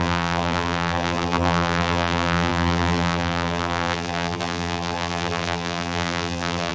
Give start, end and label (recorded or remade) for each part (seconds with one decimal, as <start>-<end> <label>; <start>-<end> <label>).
0.0-6.7 remade